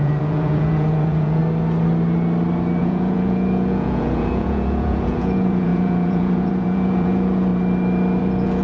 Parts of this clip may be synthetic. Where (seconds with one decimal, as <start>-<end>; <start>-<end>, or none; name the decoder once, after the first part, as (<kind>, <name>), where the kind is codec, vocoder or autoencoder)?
0.0-1.4 (vocoder, Vocos); 2.8-7.5; 8.2-8.6